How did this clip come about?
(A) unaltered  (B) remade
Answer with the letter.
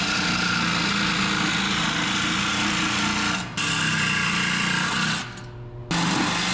A